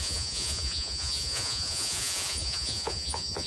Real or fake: fake